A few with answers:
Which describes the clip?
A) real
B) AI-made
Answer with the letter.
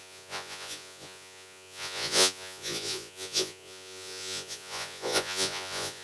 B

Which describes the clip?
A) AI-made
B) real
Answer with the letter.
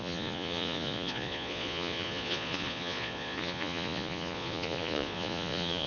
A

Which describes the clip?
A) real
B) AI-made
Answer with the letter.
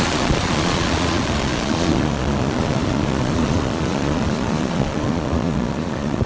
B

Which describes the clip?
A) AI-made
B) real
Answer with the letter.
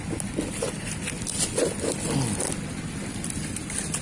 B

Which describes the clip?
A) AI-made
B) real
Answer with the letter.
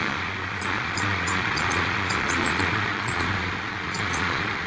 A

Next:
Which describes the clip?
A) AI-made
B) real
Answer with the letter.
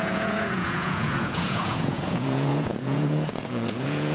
A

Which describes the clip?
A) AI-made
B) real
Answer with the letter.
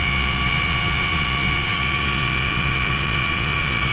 A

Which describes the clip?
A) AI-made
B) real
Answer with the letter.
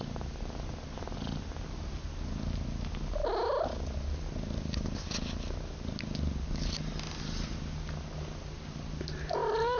B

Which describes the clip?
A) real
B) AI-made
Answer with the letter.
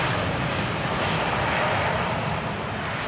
A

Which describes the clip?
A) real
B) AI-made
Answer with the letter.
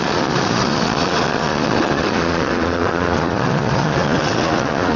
B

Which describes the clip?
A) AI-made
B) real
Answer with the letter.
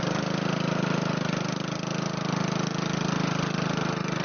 B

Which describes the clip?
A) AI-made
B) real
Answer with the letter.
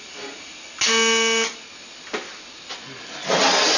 B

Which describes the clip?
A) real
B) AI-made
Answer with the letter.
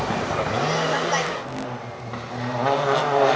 A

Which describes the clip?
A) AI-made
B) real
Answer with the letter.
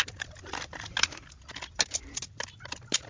B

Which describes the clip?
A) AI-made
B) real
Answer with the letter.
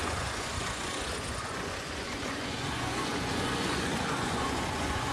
A